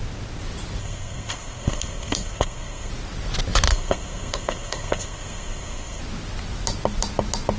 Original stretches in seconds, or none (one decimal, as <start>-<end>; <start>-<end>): 0.0-0.8; 2.9-3.7; 6.0-7.6